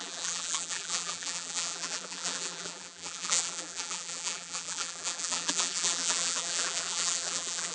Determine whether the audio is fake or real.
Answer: fake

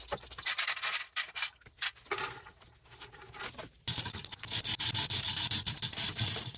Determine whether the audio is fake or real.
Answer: real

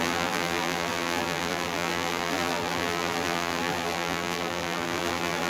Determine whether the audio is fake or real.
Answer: fake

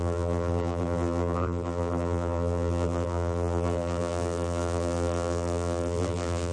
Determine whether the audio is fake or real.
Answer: fake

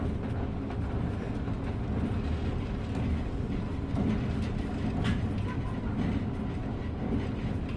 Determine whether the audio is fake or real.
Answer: real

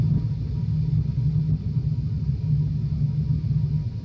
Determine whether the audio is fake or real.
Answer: real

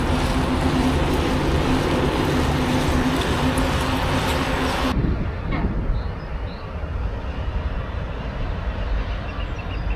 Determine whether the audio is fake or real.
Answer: real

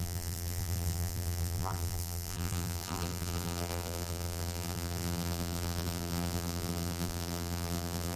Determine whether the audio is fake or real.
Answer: fake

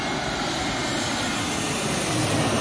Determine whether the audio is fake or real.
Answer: fake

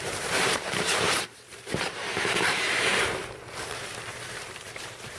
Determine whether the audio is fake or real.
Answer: fake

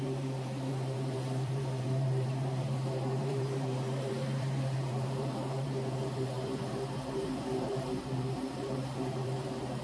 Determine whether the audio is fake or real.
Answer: fake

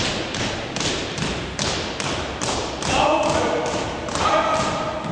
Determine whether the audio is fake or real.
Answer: fake